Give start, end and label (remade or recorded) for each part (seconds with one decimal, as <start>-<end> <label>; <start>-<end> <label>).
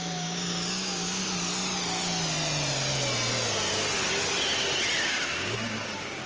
0.0-1.2 remade; 1.2-5.0 recorded; 5.0-6.3 remade